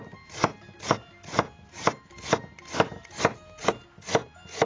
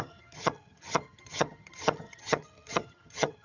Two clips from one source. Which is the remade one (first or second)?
second